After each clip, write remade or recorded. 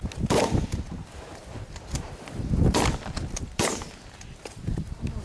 recorded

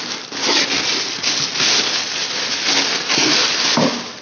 recorded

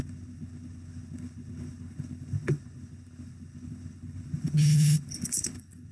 remade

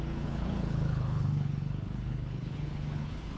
remade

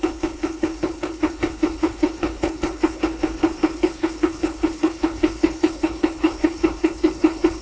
remade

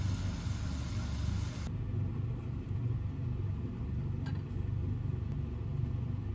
recorded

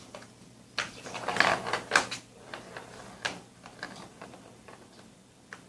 recorded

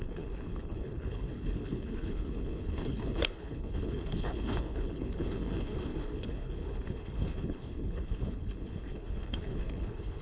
remade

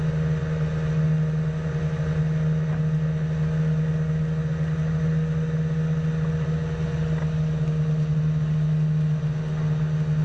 recorded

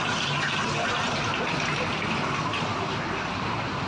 recorded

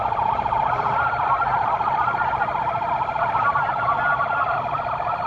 recorded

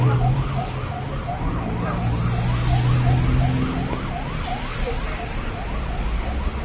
recorded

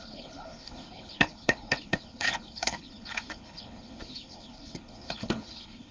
remade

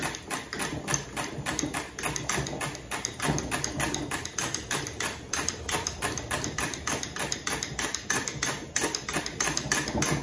recorded